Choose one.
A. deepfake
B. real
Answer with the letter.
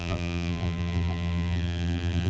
A